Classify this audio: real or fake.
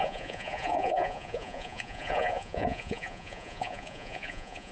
fake